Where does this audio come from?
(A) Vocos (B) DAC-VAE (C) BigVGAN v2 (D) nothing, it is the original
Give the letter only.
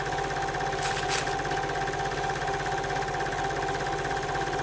D